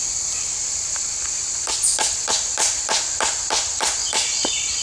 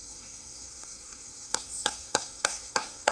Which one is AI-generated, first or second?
second